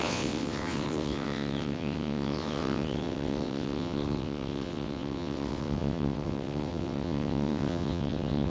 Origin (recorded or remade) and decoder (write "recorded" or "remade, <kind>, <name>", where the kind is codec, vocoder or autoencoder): remade, vocoder, WaveNeXt